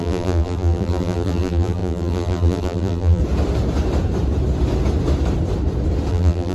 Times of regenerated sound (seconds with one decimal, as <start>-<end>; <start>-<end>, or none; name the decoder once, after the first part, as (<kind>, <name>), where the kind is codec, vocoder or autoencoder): 0.0-3.2 (vocoder, BigVGAN v2); 6.1-6.5